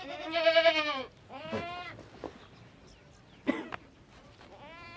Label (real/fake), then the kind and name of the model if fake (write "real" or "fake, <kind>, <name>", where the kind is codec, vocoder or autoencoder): real